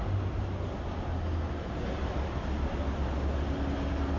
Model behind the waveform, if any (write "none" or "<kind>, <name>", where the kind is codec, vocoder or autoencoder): none